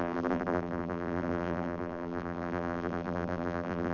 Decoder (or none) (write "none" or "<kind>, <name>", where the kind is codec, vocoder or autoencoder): vocoder, BigVGAN v2